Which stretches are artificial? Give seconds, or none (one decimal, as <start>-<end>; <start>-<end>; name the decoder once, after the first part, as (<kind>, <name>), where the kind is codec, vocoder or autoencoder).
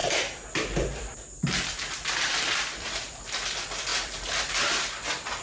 0.0-3.2 (vocoder, BigVGAN v2); 3.9-4.6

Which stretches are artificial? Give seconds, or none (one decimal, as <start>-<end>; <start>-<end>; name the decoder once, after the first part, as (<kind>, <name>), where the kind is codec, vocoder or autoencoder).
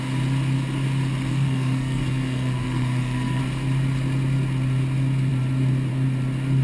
1.3-3.4 (codec, SNAC)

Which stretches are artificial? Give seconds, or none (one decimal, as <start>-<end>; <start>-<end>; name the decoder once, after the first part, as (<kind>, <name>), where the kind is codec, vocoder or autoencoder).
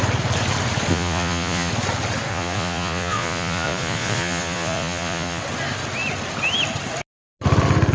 0.9-1.7 (vocoder, Vocos); 2.3-5.4